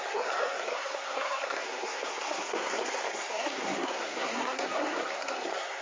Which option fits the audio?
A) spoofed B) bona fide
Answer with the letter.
A